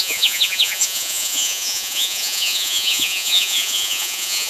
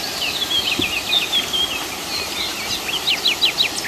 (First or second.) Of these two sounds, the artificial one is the first